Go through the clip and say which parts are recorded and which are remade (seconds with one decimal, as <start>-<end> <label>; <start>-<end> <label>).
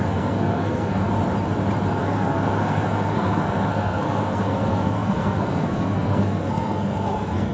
0.0-1.1 remade; 1.1-1.9 recorded; 1.9-7.5 remade